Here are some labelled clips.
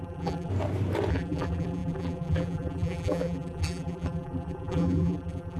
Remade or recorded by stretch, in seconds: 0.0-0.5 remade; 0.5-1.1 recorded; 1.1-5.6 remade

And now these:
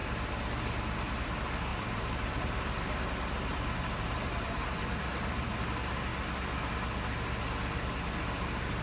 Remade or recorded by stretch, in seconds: 0.0-1.7 recorded; 1.7-3.0 remade; 3.0-3.5 recorded; 3.5-5.5 remade; 5.5-8.8 recorded

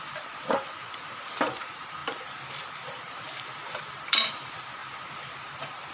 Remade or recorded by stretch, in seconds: 0.0-4.8 remade; 4.8-5.4 recorded; 5.4-5.9 remade

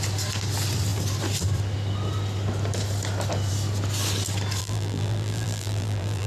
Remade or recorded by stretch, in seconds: 0.0-4.6 recorded; 4.6-6.3 remade

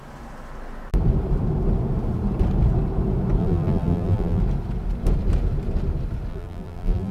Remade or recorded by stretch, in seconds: 0.0-3.4 recorded; 3.4-4.4 remade; 4.4-6.3 recorded; 6.3-7.1 remade

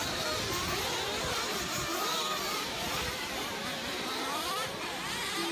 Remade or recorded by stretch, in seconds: 0.0-2.1 recorded; 2.1-5.0 remade; 5.0-5.5 recorded